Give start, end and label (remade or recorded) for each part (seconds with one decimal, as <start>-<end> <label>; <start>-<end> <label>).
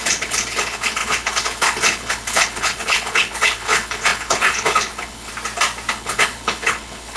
0.0-5.3 remade; 5.3-5.9 recorded; 5.9-7.2 remade